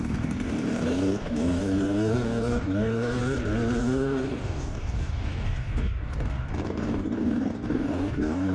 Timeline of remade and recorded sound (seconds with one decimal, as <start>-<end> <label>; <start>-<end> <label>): 0.0-3.2 remade; 3.2-3.8 recorded; 3.8-8.5 remade